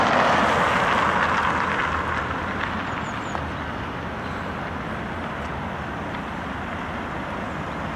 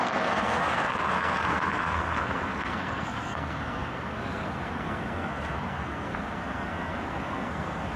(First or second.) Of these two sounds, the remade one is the second